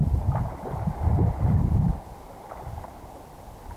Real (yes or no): yes